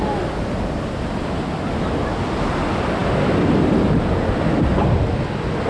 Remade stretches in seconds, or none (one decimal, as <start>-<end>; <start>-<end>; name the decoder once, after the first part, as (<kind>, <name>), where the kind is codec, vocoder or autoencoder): none